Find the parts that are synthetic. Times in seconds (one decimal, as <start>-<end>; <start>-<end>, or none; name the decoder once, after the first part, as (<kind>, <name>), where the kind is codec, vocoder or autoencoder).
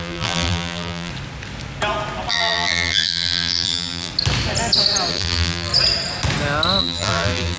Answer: 0.0-1.1 (vocoder, BigVGAN v2); 2.3-4.1; 5.1-5.7; 6.8-7.6